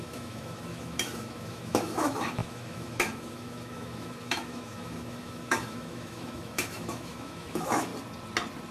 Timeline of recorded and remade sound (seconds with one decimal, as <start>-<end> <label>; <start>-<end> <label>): 0.0-7.9 remade; 7.9-8.7 recorded